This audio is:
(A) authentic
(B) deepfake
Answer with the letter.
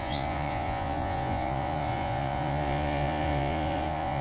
B